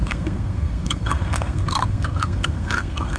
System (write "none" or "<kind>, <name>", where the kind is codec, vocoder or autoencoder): codec, SNAC